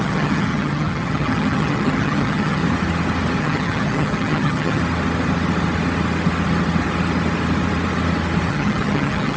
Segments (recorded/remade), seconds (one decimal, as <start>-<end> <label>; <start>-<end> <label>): 0.0-2.6 remade; 2.6-3.4 recorded; 3.4-4.8 remade; 4.8-8.5 recorded; 8.5-9.4 remade